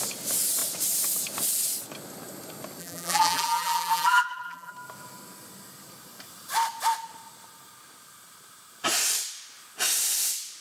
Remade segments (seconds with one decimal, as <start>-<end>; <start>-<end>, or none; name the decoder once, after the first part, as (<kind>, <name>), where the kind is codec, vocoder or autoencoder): 2.8-4.7 (vocoder, BigVGAN v2)